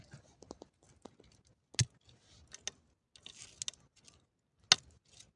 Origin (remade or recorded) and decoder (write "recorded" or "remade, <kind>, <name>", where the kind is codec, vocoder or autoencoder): recorded